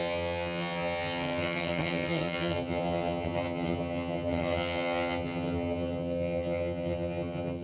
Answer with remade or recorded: remade